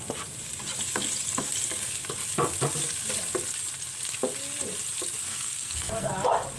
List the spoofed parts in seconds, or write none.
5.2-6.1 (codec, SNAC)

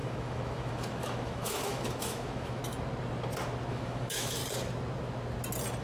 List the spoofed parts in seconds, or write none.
0.0-2.6 (autoencoder, DAC-VAE); 3.7-4.4

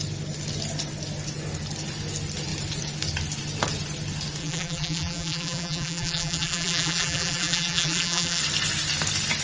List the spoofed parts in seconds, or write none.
4.4-8.4 (vocoder, BigVGAN v2)

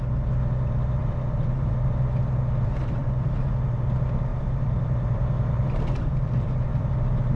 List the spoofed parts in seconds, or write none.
1.0-1.7 (vocoder, BigVGAN v2); 3.0-3.9; 4.3-6.9

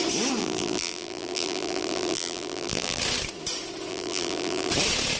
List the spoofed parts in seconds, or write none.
0.4-3.0 (vocoder, BigVGAN v2); 3.9-4.7

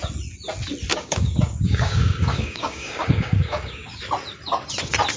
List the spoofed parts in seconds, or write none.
0.9-4.0 (codec, DAC)